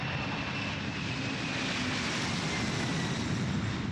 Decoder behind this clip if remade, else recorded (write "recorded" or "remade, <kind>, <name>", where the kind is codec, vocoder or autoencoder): recorded